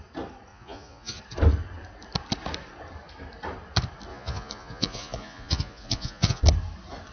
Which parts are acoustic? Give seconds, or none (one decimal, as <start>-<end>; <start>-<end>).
0.0-0.5; 1.2-4.1; 6.4-7.1